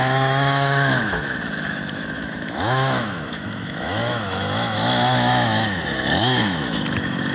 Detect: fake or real fake